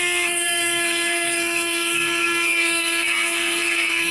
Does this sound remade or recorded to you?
remade